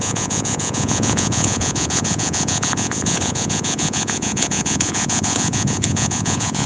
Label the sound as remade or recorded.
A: remade